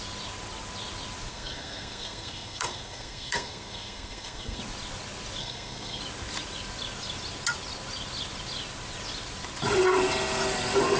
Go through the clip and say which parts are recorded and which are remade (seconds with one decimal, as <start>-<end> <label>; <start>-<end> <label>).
0.0-1.3 recorded; 1.3-4.6 remade; 4.6-5.4 recorded; 5.4-6.0 remade; 6.0-11.0 recorded

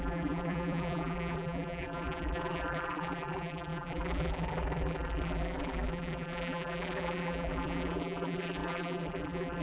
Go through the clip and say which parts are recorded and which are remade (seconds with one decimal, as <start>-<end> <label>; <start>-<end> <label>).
0.0-9.6 remade

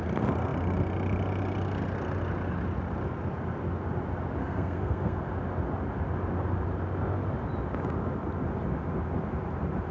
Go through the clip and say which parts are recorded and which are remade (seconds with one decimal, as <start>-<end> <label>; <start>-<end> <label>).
0.0-4.4 recorded; 4.4-5.2 remade; 5.2-9.9 recorded

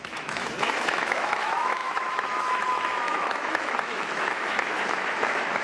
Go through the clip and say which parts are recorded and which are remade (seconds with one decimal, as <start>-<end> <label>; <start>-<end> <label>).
0.0-5.6 remade

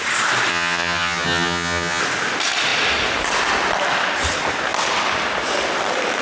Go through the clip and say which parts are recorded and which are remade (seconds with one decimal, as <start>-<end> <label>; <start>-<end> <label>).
0.0-0.5 recorded; 0.5-2.0 remade; 2.0-6.2 recorded

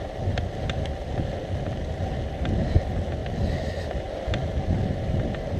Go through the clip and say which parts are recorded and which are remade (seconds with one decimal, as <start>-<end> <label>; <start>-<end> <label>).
0.0-5.6 recorded

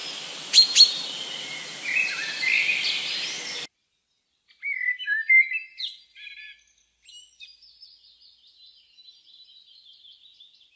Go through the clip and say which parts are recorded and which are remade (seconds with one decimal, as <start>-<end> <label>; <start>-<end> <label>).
0.0-10.8 recorded